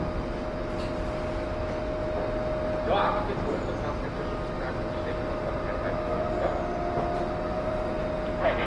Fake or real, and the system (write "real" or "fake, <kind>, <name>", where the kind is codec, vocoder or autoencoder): real